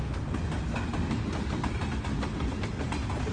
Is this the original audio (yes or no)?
yes